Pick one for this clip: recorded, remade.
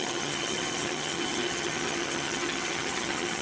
remade